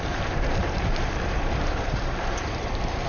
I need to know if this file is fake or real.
fake